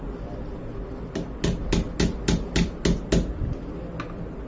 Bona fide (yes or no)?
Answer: yes